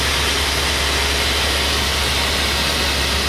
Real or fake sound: real